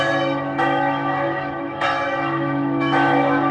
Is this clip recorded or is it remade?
remade